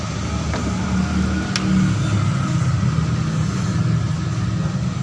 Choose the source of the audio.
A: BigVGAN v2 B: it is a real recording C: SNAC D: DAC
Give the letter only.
B